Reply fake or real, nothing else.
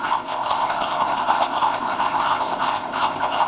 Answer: fake